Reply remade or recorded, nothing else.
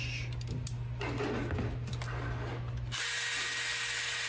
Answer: recorded